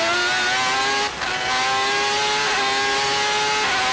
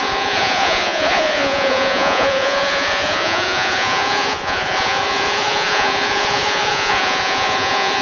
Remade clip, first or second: second